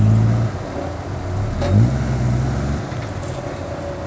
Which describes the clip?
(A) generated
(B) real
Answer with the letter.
B